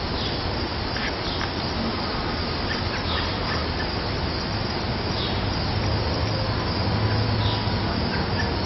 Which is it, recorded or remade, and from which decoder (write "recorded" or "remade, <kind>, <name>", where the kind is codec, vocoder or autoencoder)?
recorded